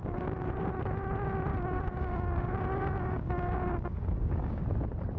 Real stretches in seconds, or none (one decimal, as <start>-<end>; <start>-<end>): 0.7-1.5; 4.6-5.2